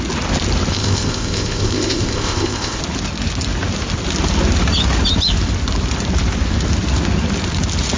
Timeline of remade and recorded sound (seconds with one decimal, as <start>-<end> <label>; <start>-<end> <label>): 0.0-0.7 recorded; 0.7-2.8 remade; 2.8-8.0 recorded